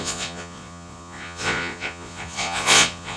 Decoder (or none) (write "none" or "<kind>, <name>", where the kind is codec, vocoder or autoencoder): vocoder, Vocos